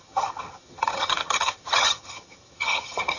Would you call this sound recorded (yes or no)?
no